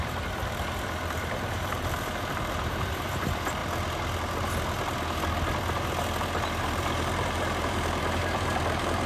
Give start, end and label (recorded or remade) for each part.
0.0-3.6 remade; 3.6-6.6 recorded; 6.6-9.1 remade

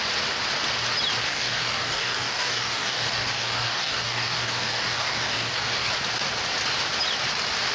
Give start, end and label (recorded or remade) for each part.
0.0-1.3 recorded; 1.3-5.9 remade; 5.9-7.7 recorded

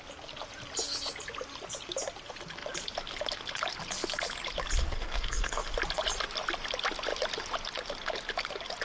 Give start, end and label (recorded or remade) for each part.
0.0-4.8 recorded; 4.8-5.7 remade; 5.7-8.8 recorded

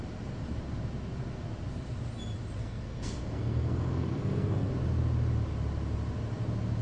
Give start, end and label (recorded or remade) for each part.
0.0-2.6 recorded; 2.6-4.7 remade; 4.7-6.8 recorded

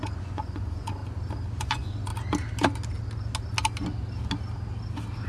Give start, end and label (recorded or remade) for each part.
0.0-1.0 remade; 1.0-1.6 recorded; 1.6-2.1 remade; 2.1-5.3 recorded

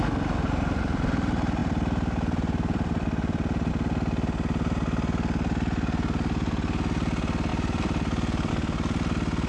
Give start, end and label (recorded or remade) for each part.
0.0-1.6 recorded; 1.6-3.7 remade; 3.7-7.5 recorded; 7.5-8.5 remade; 8.5-9.5 recorded